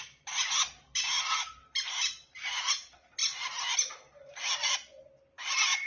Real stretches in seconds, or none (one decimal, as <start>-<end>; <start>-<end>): 0.0-5.9